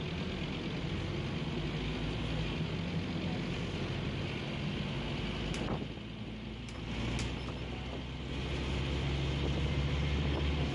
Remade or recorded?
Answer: recorded